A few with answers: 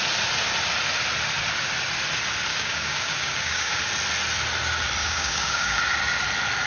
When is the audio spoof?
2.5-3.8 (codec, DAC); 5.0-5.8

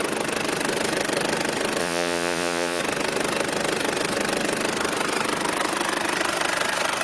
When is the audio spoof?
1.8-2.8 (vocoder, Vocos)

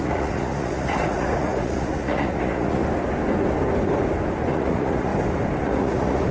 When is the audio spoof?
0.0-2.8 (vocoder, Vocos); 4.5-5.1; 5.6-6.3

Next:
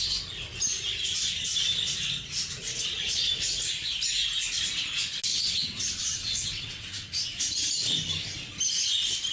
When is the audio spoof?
5.3-7.4 (vocoder, WaveNeXt)

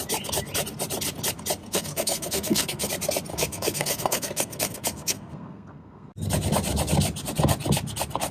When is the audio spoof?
1.6-2.9 (codec, SNAC); 3.3-6.1

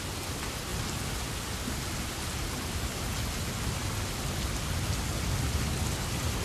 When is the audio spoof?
none

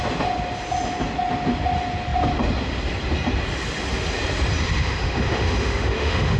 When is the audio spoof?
4.6-6.4 (autoencoder, DAC-VAE)